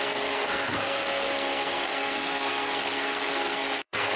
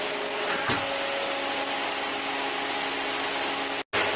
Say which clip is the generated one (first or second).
first